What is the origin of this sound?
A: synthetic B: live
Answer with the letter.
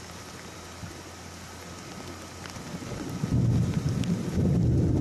B